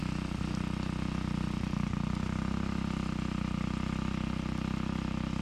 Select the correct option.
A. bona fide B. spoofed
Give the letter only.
A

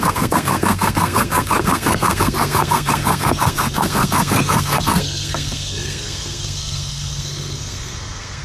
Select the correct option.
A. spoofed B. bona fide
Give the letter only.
A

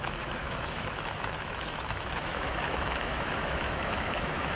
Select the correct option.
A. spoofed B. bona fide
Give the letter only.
A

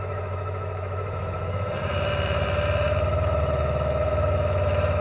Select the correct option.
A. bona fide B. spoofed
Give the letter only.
B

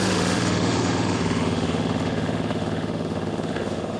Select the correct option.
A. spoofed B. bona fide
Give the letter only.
A